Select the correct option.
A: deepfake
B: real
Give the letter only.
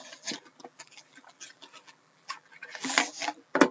A